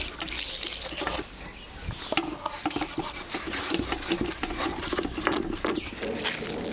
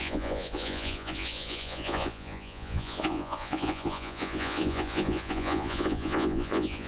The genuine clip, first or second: first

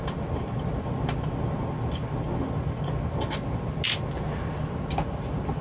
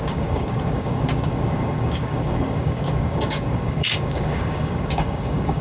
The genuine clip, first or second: first